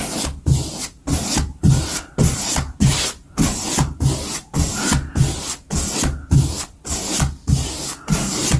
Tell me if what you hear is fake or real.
real